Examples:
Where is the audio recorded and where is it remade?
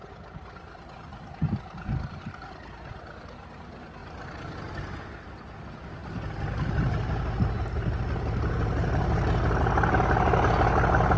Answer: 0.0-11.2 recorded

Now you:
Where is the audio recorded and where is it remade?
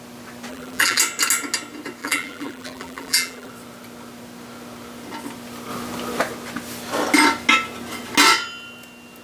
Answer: 0.0-0.5 recorded; 0.5-1.0 remade; 1.0-2.0 recorded; 2.0-3.5 remade; 3.5-9.2 recorded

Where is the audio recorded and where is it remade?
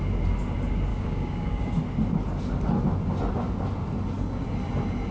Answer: 0.0-0.9 recorded; 0.9-1.7 remade; 1.7-5.1 recorded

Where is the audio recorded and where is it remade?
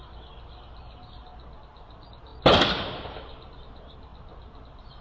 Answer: 0.0-5.0 recorded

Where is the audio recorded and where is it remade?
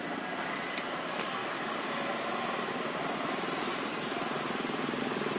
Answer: 0.0-1.4 recorded; 1.4-2.7 remade; 2.7-3.7 recorded; 3.7-5.0 remade; 5.0-5.4 recorded